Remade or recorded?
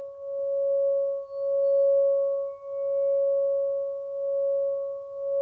recorded